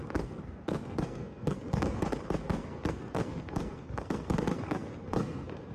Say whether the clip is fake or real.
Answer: fake